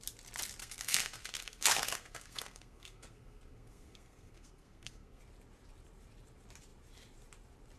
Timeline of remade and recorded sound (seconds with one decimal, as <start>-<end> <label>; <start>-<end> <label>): 0.0-0.6 recorded; 0.6-5.2 remade; 5.2-7.8 recorded